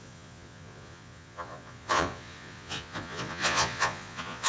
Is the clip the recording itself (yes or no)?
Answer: no